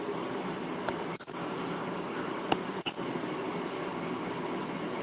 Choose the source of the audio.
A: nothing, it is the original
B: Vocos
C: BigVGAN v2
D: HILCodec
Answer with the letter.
A